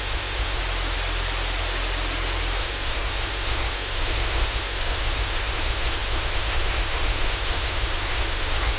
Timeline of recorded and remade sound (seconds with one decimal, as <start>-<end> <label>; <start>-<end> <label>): 0.0-0.6 remade; 0.6-2.6 recorded; 2.6-8.8 remade